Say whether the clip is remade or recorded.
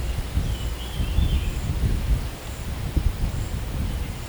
recorded